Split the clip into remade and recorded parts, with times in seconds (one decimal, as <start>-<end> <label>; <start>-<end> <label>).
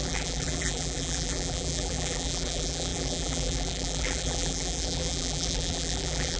0.0-6.4 remade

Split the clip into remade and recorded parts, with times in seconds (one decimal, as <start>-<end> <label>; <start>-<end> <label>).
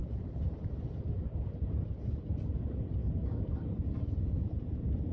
0.0-3.0 recorded; 3.0-3.7 remade; 3.7-5.1 recorded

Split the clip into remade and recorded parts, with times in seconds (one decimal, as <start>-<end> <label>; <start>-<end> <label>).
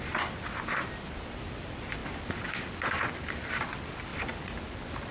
0.0-5.1 recorded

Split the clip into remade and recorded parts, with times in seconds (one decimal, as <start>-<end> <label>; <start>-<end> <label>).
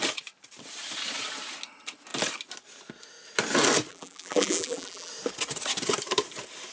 0.0-3.9 recorded; 3.9-5.1 remade; 5.1-6.7 recorded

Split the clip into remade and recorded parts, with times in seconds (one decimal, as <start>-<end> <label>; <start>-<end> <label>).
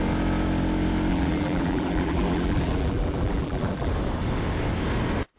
0.0-1.1 recorded; 1.1-3.9 remade; 3.9-5.4 recorded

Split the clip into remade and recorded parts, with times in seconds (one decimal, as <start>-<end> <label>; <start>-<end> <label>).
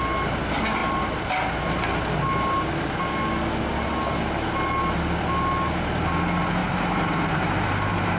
0.0-6.6 recorded; 6.6-8.2 remade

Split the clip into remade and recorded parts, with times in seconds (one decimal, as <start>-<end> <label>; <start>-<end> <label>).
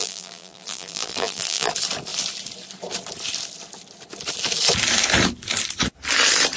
0.0-1.7 remade; 1.7-6.6 recorded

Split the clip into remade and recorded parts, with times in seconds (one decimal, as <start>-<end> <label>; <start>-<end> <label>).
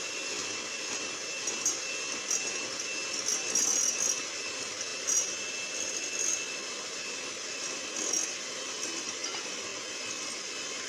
0.0-10.9 recorded